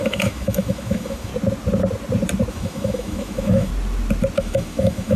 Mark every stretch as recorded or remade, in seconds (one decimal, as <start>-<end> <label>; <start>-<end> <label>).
0.0-1.3 remade; 1.3-2.5 recorded; 2.5-3.7 remade; 3.7-4.4 recorded; 4.4-5.2 remade